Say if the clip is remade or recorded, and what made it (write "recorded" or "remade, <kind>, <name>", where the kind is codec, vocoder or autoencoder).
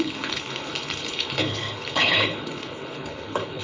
remade, codec, HILCodec